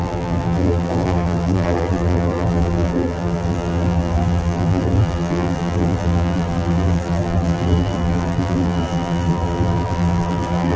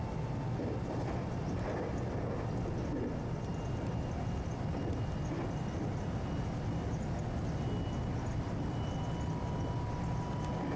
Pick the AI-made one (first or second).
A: first